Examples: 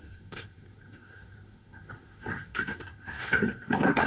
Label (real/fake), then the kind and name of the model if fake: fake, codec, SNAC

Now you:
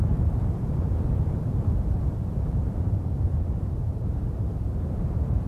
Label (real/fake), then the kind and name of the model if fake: fake, vocoder, BigVGAN v2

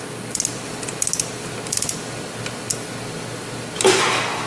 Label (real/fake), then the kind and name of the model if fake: real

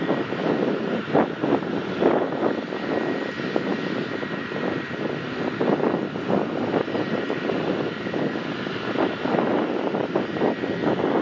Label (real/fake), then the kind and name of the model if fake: real